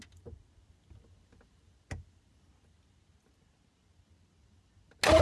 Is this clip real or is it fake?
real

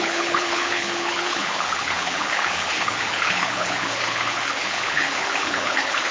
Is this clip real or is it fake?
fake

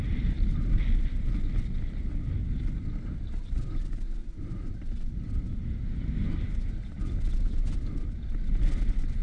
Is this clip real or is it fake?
real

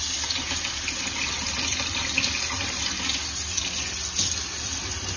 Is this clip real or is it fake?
real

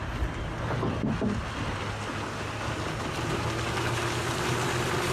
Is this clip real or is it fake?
real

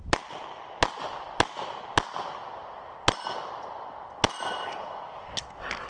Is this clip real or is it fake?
real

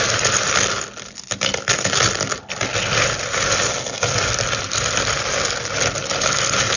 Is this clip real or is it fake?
real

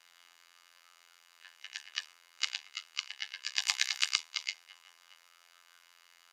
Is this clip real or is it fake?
fake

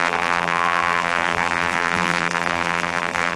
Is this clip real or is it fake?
fake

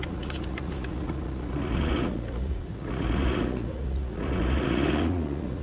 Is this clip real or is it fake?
fake